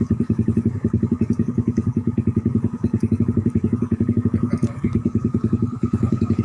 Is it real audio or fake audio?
fake